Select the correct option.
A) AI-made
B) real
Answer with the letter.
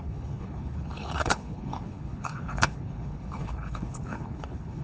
A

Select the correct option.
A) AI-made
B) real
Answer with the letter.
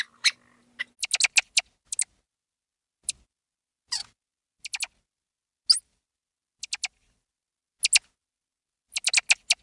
B